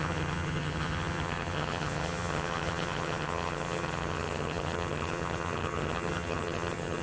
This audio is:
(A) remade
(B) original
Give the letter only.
A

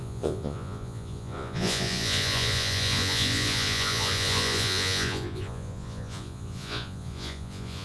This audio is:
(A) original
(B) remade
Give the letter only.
B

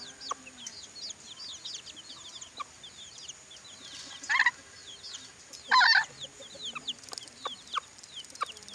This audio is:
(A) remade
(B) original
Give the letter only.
B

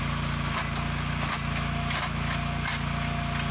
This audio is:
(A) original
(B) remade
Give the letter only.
A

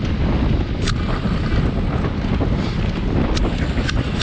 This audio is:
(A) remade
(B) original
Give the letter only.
B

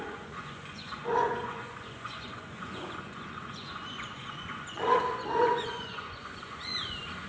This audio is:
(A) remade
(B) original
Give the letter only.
A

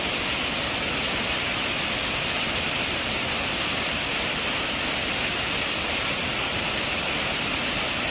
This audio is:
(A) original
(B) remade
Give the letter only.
A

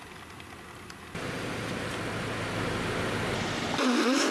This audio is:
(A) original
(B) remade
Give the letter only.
A